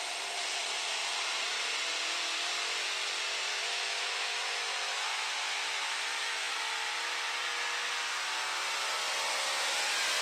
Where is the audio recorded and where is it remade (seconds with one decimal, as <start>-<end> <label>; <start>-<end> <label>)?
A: 0.0-3.5 recorded; 3.5-6.5 remade; 6.5-10.2 recorded